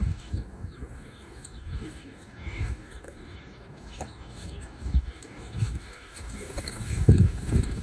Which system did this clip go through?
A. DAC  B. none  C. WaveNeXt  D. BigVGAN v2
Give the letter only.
A